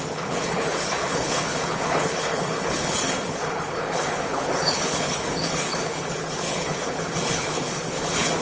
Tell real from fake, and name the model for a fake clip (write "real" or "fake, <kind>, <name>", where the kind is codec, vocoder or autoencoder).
fake, codec, HILCodec